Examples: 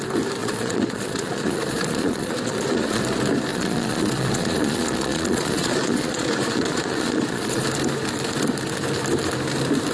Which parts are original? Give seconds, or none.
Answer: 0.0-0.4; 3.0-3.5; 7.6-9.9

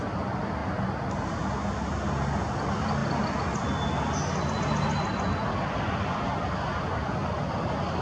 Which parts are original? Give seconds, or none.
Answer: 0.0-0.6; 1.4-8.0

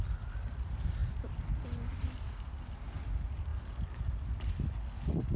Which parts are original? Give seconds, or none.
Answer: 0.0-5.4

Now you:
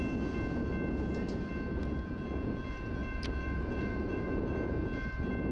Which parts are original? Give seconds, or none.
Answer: 0.0-1.8; 5.1-5.5

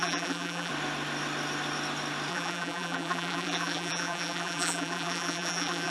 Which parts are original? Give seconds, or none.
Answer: 0.7-2.3

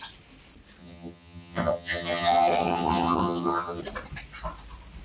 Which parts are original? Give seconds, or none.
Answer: 0.0-0.8; 3.8-5.0

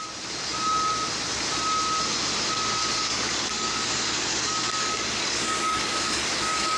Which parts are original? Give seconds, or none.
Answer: 0.0-2.8